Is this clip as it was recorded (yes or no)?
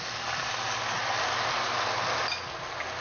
yes